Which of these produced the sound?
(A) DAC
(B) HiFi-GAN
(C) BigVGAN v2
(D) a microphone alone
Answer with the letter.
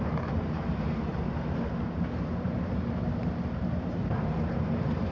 C